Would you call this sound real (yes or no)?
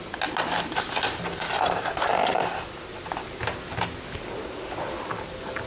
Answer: yes